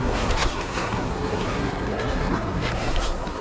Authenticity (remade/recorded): remade